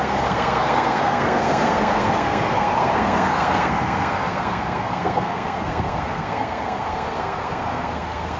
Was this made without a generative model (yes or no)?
no